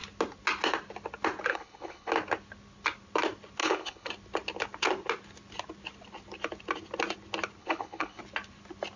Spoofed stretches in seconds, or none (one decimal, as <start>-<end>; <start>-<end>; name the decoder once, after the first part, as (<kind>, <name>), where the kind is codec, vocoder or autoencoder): 1.5-2.1 (codec, HILCodec); 3.6-4.1; 7.6-8.2